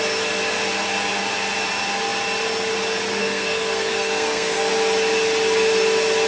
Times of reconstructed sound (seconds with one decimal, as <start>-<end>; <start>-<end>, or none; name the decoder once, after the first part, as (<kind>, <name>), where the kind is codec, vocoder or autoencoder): 3.2-4.7 (codec, SNAC)